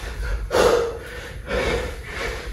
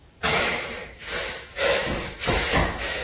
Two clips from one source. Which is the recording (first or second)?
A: first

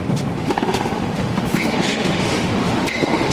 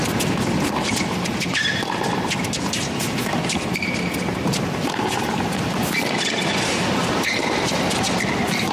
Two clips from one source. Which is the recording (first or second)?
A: second